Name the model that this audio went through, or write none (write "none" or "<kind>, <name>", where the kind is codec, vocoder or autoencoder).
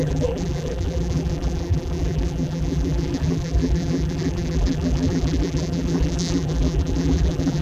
vocoder, BigVGAN v2